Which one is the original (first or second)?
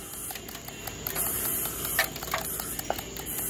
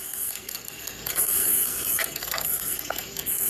first